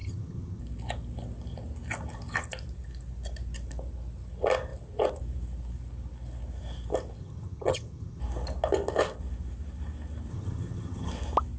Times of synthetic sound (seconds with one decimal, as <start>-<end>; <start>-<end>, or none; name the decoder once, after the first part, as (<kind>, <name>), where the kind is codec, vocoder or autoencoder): 0.0-0.6 (vocoder, HiFi-GAN); 7.2-8.2; 10.3-11.1